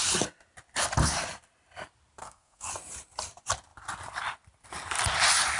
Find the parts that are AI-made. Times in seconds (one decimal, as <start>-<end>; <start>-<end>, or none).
2.2-2.7